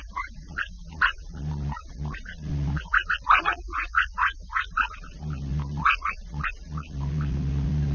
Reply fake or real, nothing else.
fake